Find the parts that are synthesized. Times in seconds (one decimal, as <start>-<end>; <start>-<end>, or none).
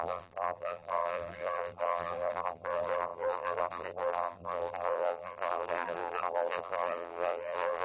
0.0-7.8